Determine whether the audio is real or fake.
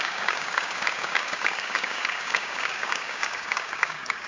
fake